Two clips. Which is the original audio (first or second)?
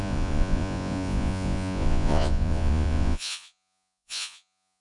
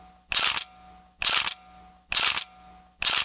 second